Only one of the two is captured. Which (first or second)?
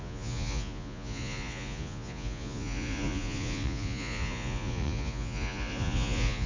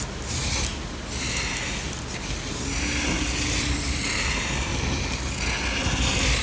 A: second